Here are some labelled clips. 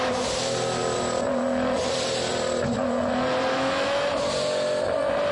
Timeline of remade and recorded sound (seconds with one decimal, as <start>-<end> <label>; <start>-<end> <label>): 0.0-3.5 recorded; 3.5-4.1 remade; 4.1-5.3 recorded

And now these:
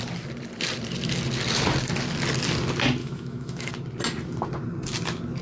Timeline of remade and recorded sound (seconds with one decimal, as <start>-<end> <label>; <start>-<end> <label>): 0.0-3.0 recorded; 3.0-3.7 remade; 3.7-5.4 recorded

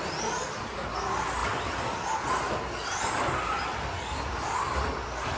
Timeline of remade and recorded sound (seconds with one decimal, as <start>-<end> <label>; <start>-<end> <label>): 0.0-5.4 recorded

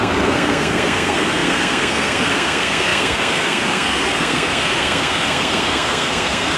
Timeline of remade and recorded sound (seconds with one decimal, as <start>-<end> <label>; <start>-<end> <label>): 0.0-6.6 remade